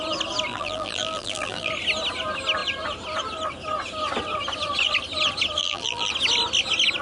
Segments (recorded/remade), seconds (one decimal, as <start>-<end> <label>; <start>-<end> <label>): 0.0-0.5 recorded; 0.5-1.7 remade; 1.7-5.6 recorded; 5.6-6.1 remade; 6.1-7.0 recorded